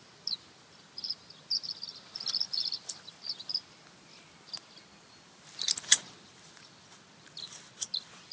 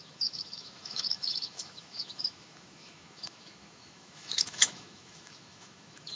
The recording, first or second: first